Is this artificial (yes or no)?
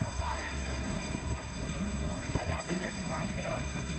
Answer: yes